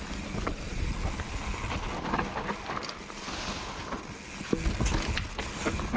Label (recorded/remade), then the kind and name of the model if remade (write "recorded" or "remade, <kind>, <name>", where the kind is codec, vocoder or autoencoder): recorded